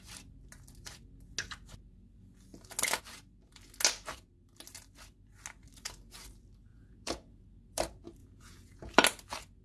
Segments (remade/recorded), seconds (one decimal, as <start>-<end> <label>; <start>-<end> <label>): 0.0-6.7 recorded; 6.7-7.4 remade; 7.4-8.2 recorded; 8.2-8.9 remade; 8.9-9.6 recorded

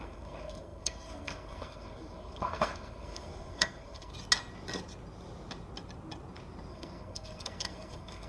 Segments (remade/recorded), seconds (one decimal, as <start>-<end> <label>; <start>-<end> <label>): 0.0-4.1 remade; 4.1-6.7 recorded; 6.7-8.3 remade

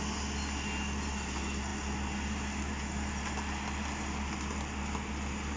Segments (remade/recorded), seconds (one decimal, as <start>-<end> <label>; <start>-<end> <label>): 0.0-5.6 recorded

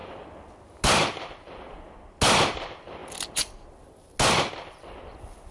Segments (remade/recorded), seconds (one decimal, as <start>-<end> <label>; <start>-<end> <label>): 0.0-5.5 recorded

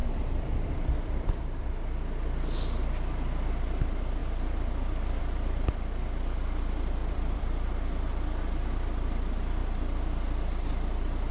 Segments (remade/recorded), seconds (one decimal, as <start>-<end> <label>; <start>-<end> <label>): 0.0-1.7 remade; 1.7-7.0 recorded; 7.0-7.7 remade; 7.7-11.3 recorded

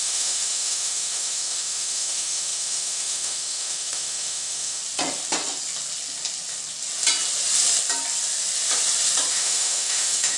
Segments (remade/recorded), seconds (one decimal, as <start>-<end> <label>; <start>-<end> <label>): 0.0-4.8 remade; 4.8-9.3 recorded; 9.3-10.4 remade

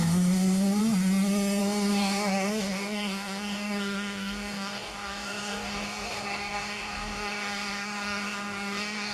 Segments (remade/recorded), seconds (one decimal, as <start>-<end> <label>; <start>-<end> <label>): 0.0-0.8 remade; 0.8-1.6 recorded; 1.6-9.1 remade

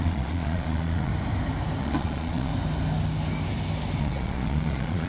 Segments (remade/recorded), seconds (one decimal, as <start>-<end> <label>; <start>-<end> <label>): 0.0-1.1 remade; 1.1-1.8 recorded; 1.8-2.5 remade; 2.5-4.0 recorded; 4.0-5.1 remade